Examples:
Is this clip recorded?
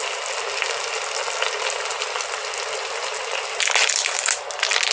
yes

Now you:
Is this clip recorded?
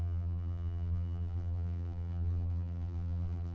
no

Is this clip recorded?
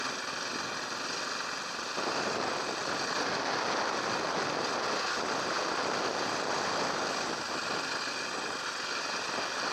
yes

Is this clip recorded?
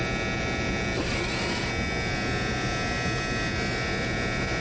yes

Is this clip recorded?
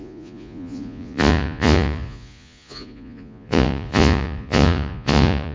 no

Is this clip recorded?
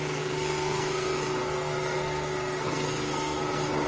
no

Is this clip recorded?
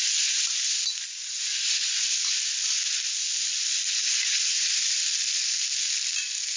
yes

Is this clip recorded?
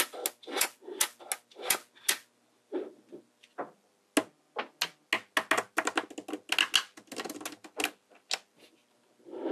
yes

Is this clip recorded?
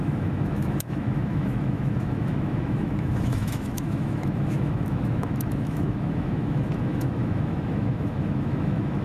no